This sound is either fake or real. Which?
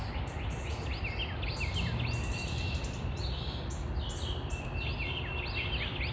real